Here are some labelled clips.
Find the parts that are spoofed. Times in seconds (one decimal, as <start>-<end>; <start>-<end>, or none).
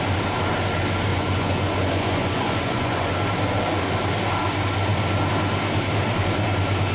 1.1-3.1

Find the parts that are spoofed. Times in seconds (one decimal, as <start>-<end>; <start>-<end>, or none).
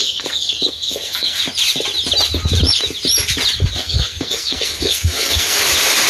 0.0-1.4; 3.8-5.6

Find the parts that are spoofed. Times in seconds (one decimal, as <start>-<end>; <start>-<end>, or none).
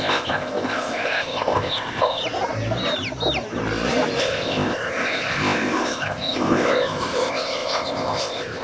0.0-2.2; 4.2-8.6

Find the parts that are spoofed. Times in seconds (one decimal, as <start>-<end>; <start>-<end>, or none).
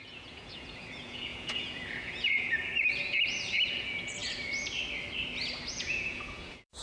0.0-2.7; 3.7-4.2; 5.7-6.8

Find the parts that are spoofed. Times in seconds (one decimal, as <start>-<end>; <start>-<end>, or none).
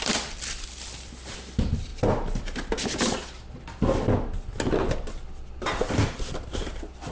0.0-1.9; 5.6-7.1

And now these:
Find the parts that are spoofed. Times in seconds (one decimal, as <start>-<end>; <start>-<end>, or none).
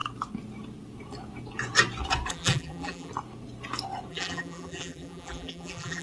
2.3-3.1; 4.1-6.0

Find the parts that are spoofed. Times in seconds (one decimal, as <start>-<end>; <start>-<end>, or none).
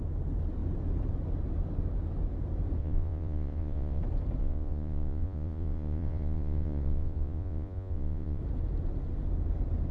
2.8-4.0; 4.4-8.4